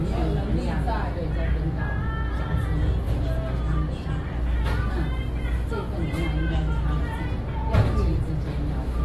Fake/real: real